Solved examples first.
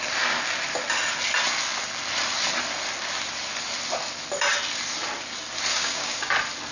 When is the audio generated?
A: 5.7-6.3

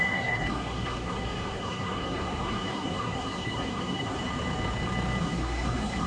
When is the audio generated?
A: 0.0-4.2; 5.2-6.1

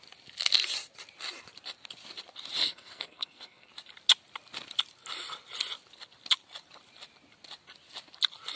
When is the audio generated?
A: 2.6-3.7

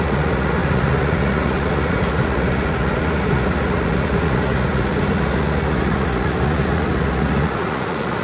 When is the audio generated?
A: 0.0-8.2

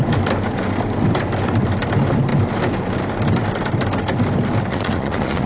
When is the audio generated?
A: 4.7-5.5